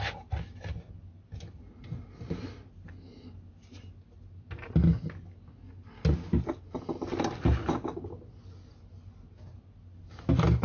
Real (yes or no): yes